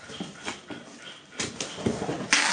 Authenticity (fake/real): real